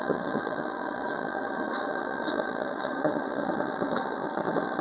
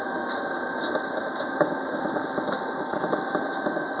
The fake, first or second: first